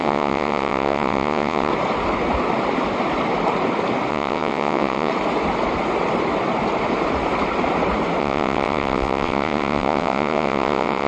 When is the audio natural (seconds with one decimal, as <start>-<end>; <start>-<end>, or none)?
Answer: 1.7-4.1; 5.1-8.2